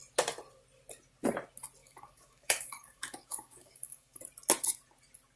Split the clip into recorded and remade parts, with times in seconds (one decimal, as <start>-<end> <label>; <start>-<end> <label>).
0.0-1.8 recorded; 1.8-4.2 remade; 4.2-5.4 recorded